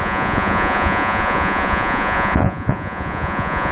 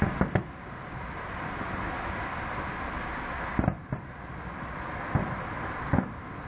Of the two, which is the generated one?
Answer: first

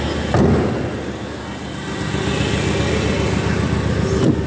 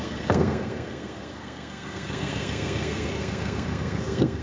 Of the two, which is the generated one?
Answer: second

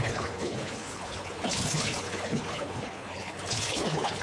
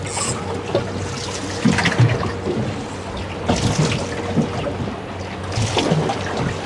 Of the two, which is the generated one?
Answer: first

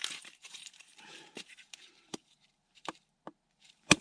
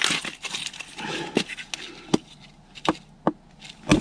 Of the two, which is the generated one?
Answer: first